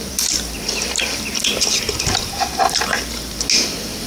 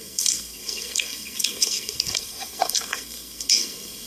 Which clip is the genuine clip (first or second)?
first